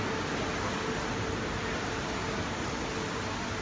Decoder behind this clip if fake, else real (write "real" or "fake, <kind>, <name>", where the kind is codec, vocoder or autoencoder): real